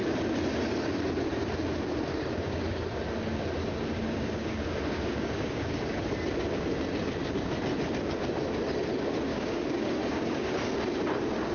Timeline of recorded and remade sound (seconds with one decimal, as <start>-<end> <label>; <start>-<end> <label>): 0.0-2.1 recorded; 2.1-3.0 remade; 3.0-3.9 recorded; 3.9-6.1 remade; 6.1-9.3 recorded; 9.3-10.5 remade; 10.5-11.5 recorded